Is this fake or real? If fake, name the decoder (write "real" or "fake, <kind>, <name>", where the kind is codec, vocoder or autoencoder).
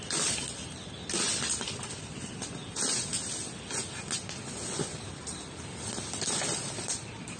real